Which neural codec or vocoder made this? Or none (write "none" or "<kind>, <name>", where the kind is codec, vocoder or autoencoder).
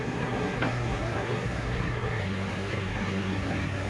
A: codec, SNAC